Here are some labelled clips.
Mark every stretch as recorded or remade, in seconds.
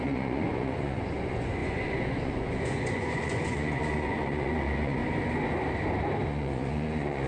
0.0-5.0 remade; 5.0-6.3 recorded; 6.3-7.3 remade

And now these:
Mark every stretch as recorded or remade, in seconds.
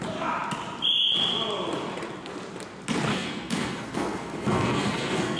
0.0-3.1 recorded; 3.1-5.4 remade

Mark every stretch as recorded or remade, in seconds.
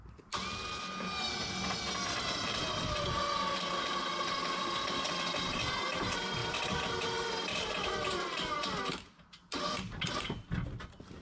0.0-4.4 recorded; 4.4-5.0 remade; 5.0-6.4 recorded; 6.4-7.7 remade; 7.7-11.2 recorded